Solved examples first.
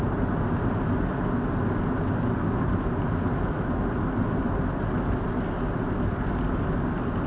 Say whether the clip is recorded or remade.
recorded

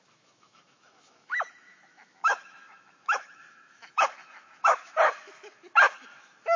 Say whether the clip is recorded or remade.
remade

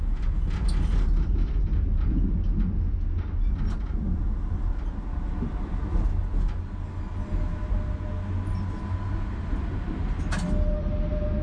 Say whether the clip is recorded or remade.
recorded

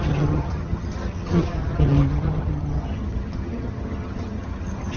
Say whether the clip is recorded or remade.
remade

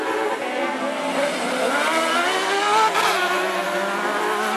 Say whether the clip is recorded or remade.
recorded